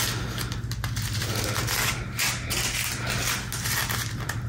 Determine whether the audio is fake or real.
real